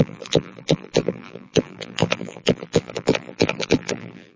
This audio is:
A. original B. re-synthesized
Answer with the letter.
B